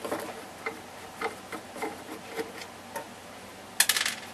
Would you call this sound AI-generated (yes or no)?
no